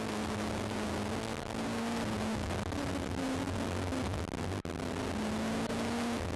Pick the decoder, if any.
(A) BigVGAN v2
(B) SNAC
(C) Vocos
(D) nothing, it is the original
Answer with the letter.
D